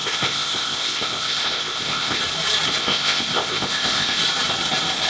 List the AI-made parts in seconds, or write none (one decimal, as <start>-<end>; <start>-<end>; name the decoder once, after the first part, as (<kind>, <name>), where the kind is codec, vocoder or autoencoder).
0.0-2.2 (codec, ZipCodec); 2.8-4.2